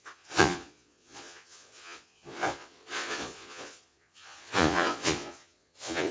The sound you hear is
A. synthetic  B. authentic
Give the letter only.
A